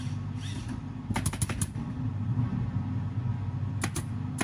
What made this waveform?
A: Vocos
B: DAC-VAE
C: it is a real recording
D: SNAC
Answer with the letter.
C